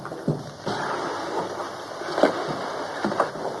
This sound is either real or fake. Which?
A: real